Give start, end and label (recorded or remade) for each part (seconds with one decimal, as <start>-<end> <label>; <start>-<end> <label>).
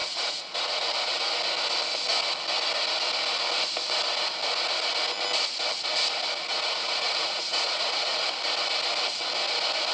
0.0-1.3 remade; 1.3-6.5 recorded; 6.5-8.3 remade; 8.3-9.9 recorded